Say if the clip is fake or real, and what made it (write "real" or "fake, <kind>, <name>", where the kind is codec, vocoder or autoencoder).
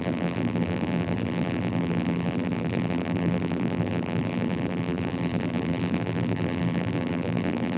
fake, vocoder, BigVGAN v2